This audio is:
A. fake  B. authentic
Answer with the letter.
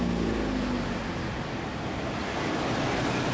B